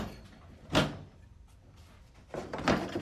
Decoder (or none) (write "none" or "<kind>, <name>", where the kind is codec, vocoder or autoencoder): none